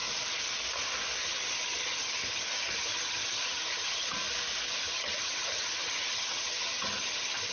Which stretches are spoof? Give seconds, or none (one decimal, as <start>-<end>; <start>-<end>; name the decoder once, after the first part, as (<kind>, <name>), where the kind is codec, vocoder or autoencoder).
1.2-4.2 (vocoder, HiFi-GAN); 4.8-7.5